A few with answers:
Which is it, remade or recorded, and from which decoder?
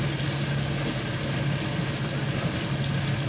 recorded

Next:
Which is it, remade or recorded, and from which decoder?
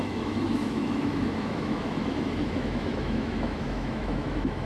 remade, autoencoder, DAC-VAE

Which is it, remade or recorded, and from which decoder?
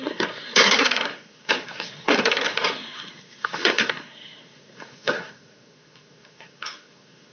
remade, codec, SNAC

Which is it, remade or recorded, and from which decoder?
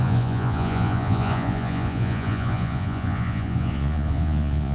remade, vocoder, Vocos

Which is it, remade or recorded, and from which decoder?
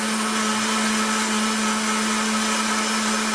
recorded